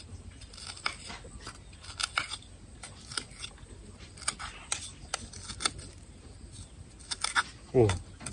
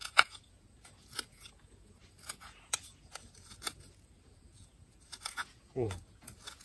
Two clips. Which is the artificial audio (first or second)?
second